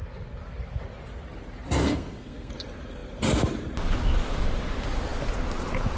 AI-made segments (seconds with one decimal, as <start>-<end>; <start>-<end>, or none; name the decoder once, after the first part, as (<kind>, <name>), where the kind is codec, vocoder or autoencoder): 1.8-2.5 (codec, SNAC)